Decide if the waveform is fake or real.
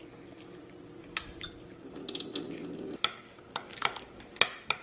real